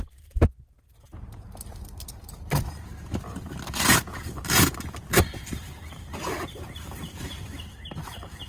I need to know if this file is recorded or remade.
remade